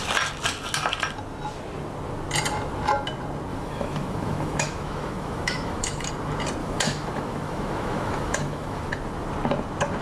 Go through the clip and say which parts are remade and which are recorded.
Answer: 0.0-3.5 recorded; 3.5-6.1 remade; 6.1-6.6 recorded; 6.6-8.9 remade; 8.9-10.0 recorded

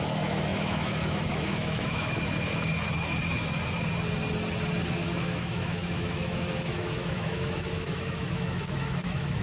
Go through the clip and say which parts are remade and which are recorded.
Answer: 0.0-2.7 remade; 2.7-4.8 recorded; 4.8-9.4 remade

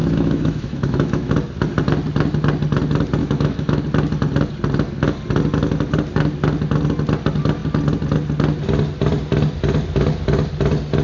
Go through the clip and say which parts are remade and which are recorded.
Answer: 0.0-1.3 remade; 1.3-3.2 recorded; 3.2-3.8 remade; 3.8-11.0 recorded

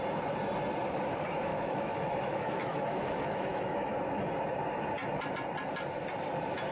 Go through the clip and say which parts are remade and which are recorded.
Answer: 0.0-1.5 recorded; 1.5-3.9 remade; 3.9-6.7 recorded

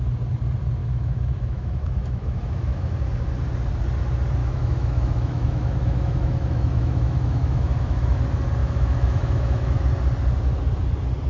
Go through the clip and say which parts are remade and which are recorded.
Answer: 0.0-0.8 recorded; 0.8-2.9 remade; 2.9-4.4 recorded; 4.4-8.2 remade; 8.2-8.6 recorded; 8.6-9.8 remade; 9.8-11.3 recorded

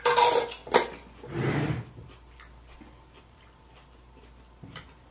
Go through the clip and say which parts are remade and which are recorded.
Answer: 0.0-5.1 recorded

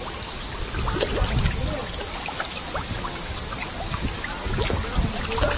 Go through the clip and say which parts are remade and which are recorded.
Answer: 0.0-5.6 recorded

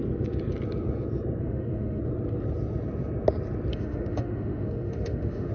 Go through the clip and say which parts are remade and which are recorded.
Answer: 0.0-1.4 recorded; 1.4-2.0 remade; 2.0-3.7 recorded; 3.7-5.5 remade